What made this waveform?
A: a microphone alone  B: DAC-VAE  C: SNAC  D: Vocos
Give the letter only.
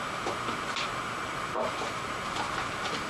A